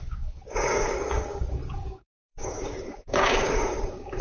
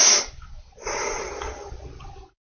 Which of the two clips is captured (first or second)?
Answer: second